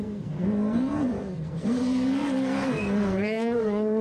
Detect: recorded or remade remade